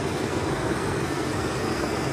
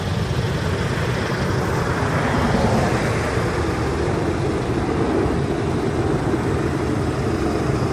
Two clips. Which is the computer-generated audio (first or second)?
first